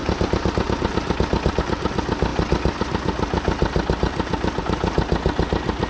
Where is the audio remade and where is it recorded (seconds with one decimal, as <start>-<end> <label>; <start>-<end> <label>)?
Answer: 0.0-5.9 recorded